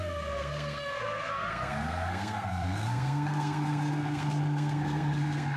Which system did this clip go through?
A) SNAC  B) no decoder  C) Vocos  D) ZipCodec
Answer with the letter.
A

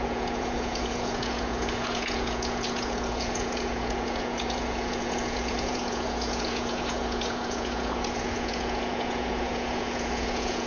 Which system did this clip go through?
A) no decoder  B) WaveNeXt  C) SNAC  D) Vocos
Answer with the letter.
D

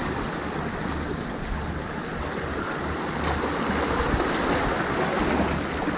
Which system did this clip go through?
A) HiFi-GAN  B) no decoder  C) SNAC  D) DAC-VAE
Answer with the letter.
B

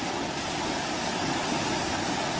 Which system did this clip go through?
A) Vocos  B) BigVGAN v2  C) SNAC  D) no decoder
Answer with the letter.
D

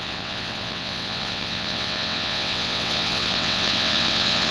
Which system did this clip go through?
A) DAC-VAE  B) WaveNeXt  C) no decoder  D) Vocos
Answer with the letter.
B